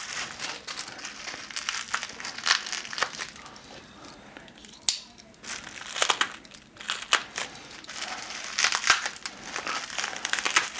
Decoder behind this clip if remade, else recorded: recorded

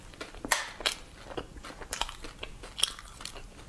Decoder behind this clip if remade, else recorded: recorded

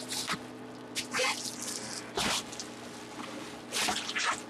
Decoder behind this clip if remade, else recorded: recorded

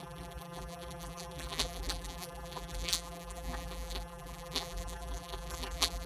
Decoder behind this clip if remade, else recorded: remade, vocoder, BigVGAN v2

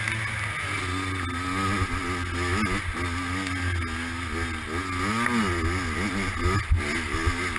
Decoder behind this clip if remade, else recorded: recorded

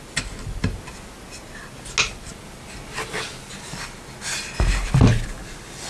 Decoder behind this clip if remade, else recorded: recorded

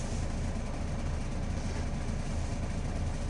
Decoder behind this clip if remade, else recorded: recorded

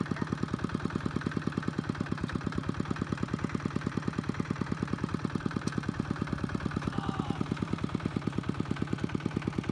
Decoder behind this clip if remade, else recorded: remade, vocoder, BigVGAN v2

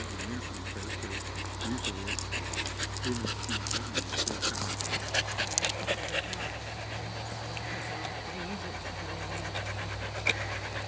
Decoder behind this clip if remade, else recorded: recorded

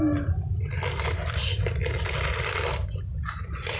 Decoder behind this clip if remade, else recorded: recorded